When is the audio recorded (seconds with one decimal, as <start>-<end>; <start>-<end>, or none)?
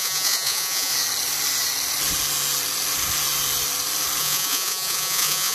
0.9-4.2